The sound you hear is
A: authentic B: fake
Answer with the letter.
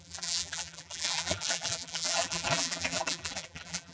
B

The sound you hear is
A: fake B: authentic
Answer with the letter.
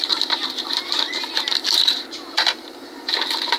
A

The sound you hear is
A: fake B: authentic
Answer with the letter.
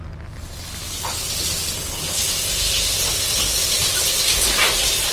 B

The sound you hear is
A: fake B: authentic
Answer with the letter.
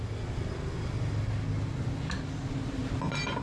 B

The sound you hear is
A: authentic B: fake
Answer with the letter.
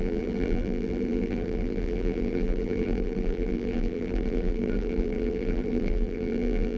B